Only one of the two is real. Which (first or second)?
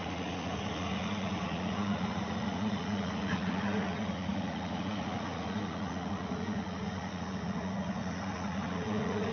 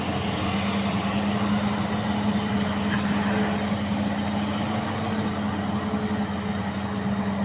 second